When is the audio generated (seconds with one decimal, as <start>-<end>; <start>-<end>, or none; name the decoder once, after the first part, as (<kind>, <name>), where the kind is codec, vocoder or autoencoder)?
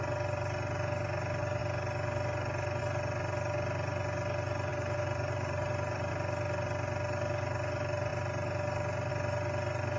4.7-6.1 (vocoder, BigVGAN v2)